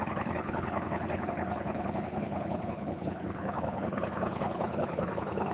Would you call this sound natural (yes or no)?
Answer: no